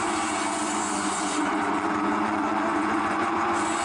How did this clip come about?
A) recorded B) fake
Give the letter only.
B